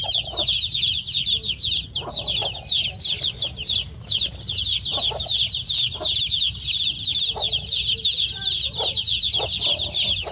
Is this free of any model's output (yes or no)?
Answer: yes